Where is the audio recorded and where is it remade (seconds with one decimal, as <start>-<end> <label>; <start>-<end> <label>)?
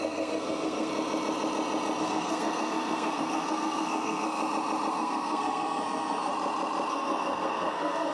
0.0-0.9 remade; 0.9-2.0 recorded; 2.0-4.4 remade; 4.4-4.9 recorded; 4.9-6.3 remade; 6.3-6.9 recorded; 6.9-8.1 remade